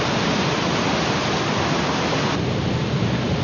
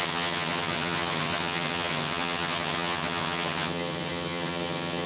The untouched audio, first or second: first